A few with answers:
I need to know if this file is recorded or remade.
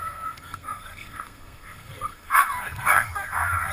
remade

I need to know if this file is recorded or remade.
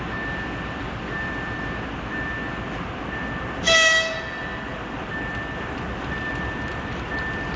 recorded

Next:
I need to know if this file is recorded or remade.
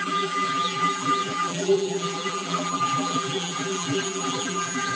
remade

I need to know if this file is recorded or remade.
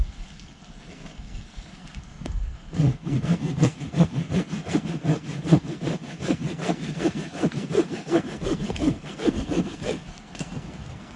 remade